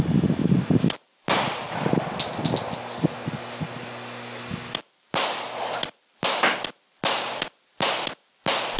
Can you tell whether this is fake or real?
real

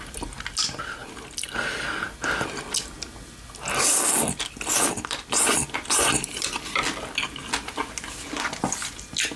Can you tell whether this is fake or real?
real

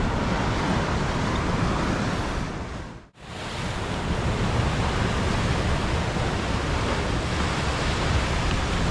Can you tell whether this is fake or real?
real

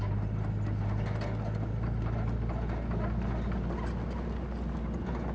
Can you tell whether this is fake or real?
real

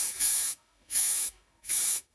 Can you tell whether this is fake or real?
fake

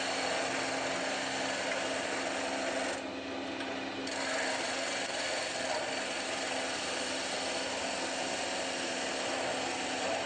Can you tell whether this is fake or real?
real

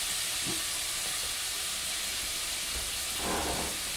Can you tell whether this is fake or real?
real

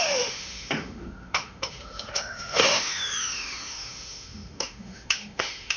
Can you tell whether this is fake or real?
fake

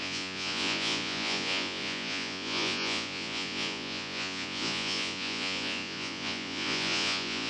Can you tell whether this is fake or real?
fake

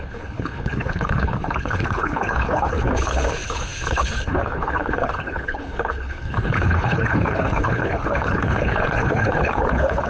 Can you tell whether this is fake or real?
fake